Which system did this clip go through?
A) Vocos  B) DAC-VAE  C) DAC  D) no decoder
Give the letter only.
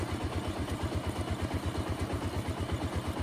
D